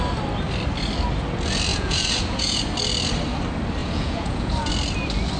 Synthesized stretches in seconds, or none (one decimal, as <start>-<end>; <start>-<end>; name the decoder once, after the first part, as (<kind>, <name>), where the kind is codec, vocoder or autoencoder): 1.7-2.6 (vocoder, Vocos); 3.8-4.7